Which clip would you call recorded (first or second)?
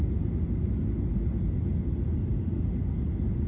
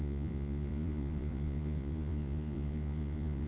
first